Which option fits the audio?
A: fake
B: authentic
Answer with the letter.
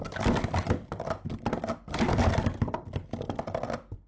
B